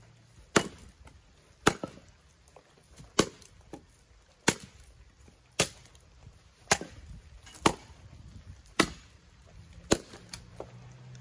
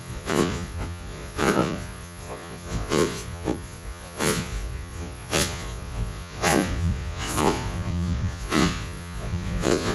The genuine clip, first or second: first